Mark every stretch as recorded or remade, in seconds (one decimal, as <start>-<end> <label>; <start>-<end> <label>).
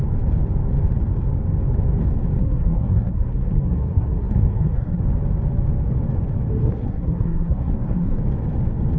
0.0-2.4 recorded; 2.4-5.0 remade; 5.0-6.5 recorded; 6.5-8.2 remade; 8.2-9.0 recorded